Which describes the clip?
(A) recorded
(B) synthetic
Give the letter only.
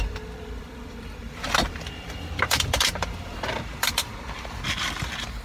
B